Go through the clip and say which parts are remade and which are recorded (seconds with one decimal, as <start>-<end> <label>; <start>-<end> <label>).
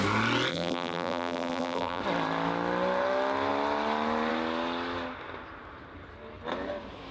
0.0-0.5 recorded; 0.5-2.0 remade; 2.0-7.1 recorded